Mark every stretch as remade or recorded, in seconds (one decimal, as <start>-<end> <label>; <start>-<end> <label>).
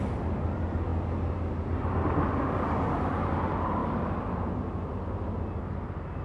0.0-6.2 recorded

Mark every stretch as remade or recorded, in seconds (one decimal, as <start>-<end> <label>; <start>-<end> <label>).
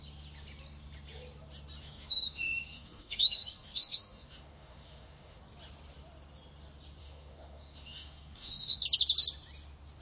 0.0-1.8 recorded; 1.8-5.4 remade; 5.4-7.0 recorded; 7.0-8.8 remade; 8.8-10.0 recorded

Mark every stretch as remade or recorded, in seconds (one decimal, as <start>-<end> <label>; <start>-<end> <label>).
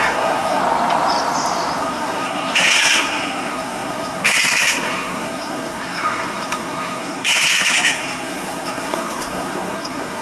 0.0-0.6 remade; 0.6-1.8 recorded; 1.8-10.2 remade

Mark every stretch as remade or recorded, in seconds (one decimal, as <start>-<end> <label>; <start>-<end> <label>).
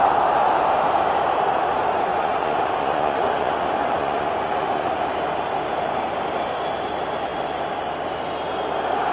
0.0-2.1 recorded; 2.1-5.0 remade; 5.0-9.1 recorded